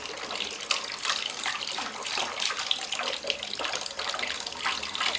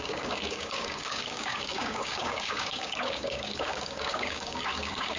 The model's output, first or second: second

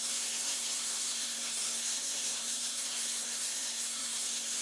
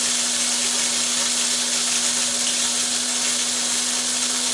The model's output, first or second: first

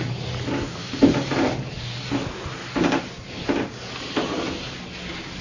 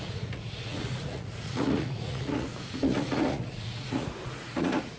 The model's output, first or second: second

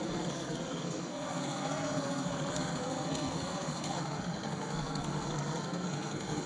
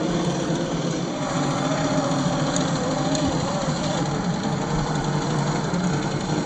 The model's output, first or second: first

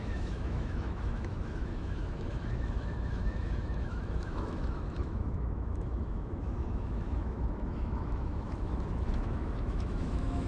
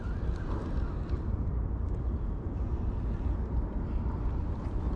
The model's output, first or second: first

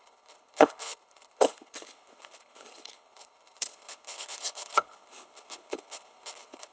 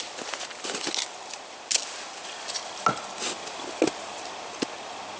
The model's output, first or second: first